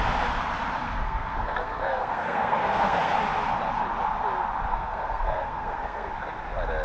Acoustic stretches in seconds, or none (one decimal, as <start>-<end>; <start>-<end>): 0.0-0.8; 3.1-4.7; 6.1-6.8